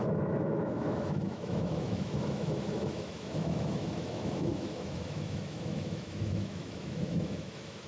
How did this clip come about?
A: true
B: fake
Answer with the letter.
B